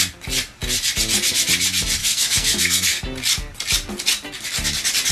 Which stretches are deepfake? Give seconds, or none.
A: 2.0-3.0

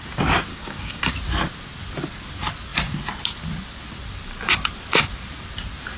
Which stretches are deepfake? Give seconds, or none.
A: 0.5-1.1

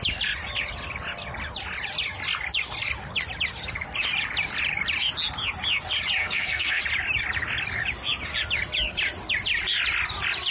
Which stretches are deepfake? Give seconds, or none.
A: 6.2-6.8

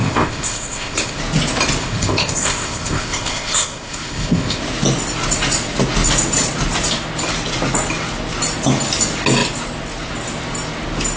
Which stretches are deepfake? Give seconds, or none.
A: 0.0-1.2; 1.8-4.6

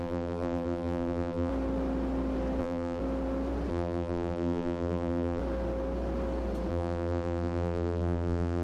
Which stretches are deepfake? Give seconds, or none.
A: 0.0-1.5; 2.6-3.0; 3.7-5.4; 6.7-8.6